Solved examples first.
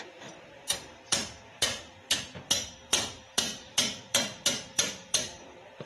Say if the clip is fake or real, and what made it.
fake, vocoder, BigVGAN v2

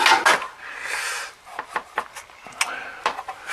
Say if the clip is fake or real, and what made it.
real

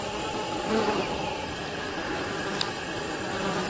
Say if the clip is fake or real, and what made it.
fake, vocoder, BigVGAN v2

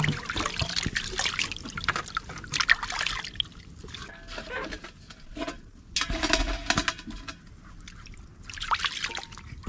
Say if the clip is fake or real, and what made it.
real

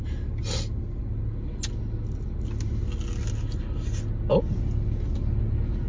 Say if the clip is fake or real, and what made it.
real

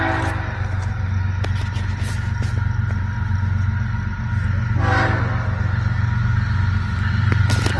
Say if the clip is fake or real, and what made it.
real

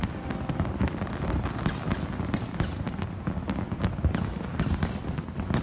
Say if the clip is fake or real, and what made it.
real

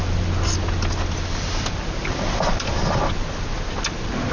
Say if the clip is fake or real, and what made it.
real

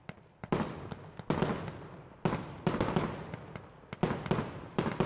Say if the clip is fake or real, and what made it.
real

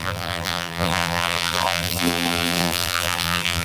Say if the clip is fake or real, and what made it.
fake, vocoder, BigVGAN v2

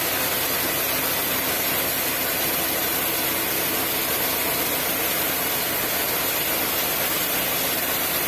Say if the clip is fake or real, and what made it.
real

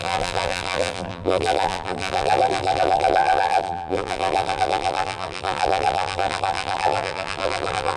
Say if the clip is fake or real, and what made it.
fake, vocoder, BigVGAN v2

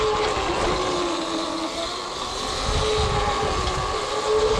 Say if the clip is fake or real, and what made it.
real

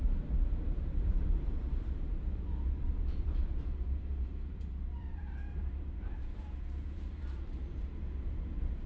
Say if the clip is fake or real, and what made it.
fake, vocoder, BigVGAN v2